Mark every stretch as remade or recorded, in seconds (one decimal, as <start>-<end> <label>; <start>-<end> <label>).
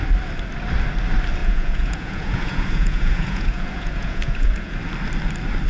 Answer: 0.0-1.4 recorded; 1.4-4.8 remade; 4.8-5.7 recorded